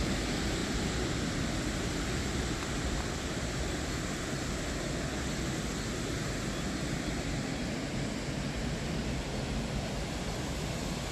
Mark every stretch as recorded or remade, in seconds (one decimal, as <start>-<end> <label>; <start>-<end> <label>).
0.0-11.1 recorded